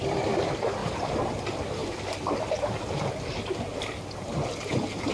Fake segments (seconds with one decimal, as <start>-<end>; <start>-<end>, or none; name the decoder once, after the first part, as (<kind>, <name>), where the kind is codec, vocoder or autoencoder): 0.8-1.4 (vocoder, BigVGAN v2); 1.8-5.1

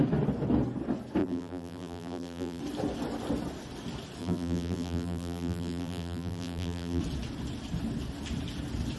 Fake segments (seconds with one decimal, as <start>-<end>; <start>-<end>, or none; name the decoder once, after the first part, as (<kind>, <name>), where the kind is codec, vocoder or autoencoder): 1.2-2.6 (vocoder, BigVGAN v2); 4.2-7.0